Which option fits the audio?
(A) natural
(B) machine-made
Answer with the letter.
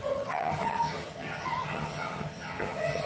B